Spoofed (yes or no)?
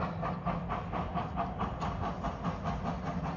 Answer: no